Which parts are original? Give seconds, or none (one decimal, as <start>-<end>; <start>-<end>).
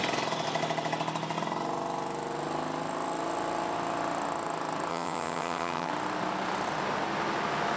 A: 0.0-4.9; 5.9-7.8